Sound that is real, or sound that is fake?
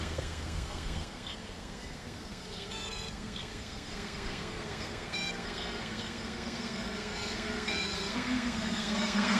fake